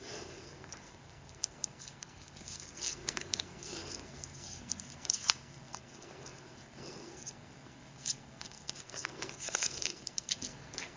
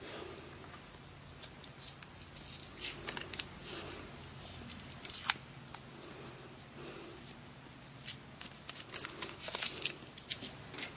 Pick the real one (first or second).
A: second